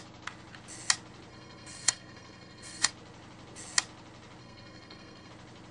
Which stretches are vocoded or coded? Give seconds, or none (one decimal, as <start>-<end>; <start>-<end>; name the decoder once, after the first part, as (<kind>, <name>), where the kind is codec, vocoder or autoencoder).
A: 1.3-2.9 (codec, SNAC); 4.4-5.3